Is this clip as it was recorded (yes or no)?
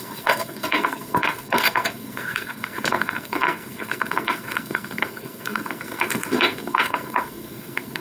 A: no